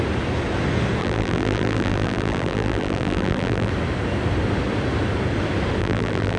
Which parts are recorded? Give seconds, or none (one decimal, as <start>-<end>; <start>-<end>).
0.0-1.0; 3.7-5.8